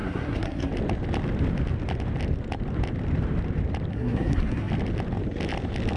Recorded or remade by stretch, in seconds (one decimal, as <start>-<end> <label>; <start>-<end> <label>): 0.0-0.7 remade; 0.7-3.9 recorded; 3.9-4.7 remade; 4.7-6.0 recorded